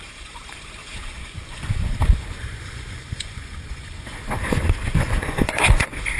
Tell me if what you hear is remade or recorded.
remade